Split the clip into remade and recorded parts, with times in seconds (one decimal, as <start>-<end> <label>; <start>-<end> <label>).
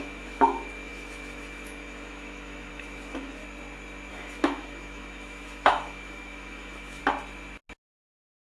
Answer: 0.0-3.4 remade; 3.4-4.1 recorded; 4.1-7.0 remade; 7.0-8.5 recorded